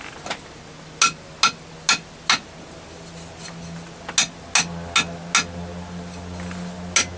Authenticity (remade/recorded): recorded